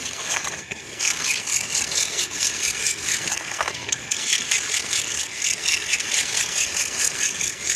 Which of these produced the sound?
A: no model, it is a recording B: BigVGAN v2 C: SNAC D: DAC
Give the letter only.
C